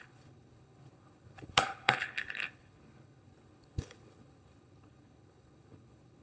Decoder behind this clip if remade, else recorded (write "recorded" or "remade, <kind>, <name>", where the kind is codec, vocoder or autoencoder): remade, codec, HILCodec